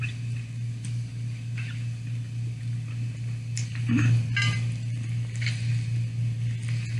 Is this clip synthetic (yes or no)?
no